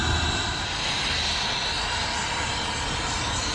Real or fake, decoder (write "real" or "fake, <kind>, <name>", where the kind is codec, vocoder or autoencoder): real